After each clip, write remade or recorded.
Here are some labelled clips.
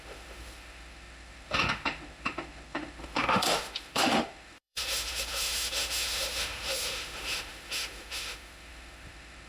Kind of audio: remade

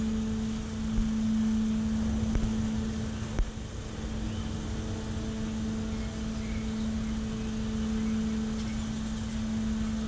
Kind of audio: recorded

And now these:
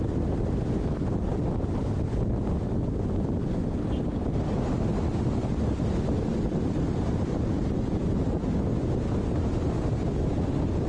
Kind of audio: recorded